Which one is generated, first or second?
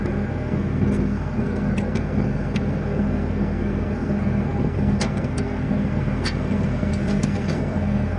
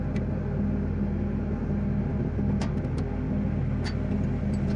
first